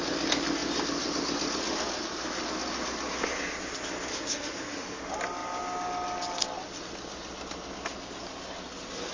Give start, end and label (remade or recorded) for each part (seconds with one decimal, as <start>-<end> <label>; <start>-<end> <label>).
0.0-4.1 recorded; 4.1-5.0 remade; 5.0-9.1 recorded